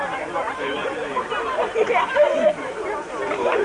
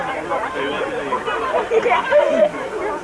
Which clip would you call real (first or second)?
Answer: second